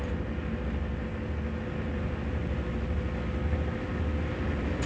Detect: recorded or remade recorded